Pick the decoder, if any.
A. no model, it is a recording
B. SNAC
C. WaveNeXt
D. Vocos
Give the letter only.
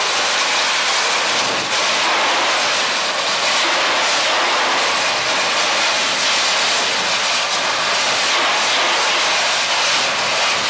A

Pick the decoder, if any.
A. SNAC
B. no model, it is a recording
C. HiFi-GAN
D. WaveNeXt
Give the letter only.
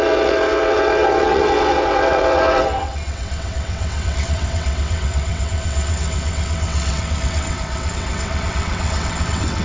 D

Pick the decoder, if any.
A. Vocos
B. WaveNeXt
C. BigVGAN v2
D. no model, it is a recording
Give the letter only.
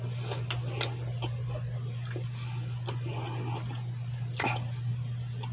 D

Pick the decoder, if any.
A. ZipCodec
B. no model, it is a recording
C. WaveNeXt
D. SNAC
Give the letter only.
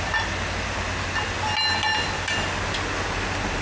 B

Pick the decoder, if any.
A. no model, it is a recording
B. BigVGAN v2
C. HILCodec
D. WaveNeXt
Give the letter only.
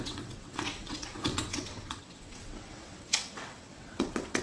D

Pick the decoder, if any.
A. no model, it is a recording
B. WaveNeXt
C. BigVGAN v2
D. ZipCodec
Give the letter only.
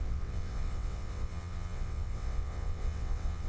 B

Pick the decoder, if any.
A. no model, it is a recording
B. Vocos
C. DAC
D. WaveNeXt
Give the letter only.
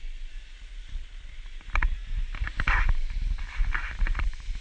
A